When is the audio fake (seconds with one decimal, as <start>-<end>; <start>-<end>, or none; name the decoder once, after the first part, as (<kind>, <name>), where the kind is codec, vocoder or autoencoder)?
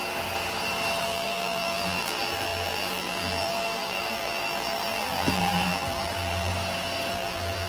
1.0-6.5 (vocoder, BigVGAN v2); 7.1-7.7